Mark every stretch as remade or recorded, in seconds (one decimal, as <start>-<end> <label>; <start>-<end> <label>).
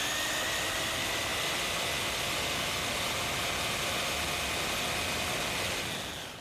0.0-6.4 recorded